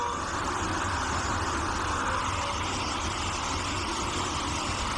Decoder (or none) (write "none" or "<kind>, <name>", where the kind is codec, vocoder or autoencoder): none